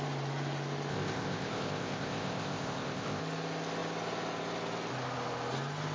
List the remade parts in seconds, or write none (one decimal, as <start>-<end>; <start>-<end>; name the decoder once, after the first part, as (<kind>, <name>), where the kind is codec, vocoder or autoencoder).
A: 0.9-3.2 (codec, ZipCodec)